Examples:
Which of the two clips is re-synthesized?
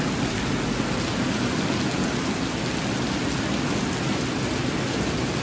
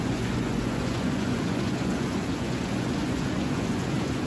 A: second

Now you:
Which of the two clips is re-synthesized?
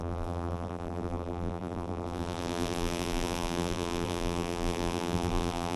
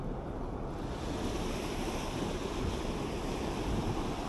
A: first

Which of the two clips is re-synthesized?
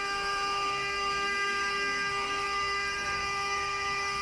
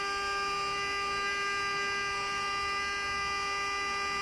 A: first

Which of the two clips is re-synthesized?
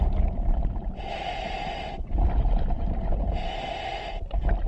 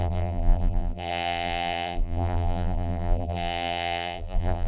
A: second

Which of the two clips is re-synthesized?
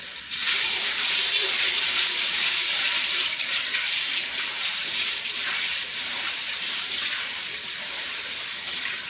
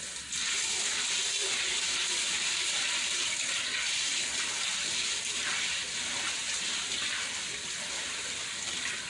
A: first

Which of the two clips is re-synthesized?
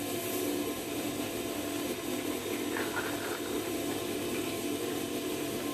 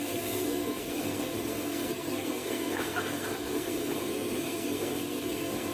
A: second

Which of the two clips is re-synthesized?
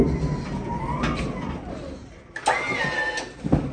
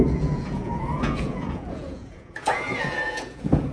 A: second